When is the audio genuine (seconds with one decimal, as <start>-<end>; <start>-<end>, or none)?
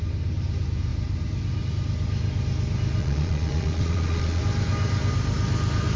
0.0-3.0; 4.4-6.0